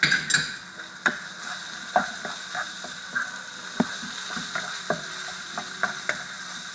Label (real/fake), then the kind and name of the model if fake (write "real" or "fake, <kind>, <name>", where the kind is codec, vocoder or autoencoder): real